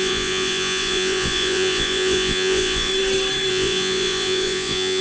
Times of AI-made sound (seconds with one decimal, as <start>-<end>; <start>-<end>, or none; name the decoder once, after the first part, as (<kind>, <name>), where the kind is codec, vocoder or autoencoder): 0.0-2.9 (vocoder, Vocos); 3.5-5.0